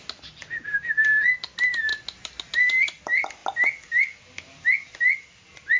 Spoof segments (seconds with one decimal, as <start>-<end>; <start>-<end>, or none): none